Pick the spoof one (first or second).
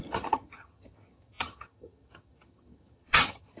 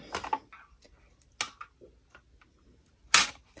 first